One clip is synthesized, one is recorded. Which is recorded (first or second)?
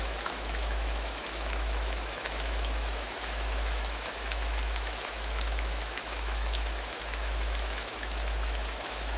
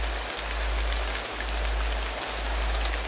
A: second